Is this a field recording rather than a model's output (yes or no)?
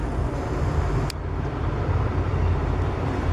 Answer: no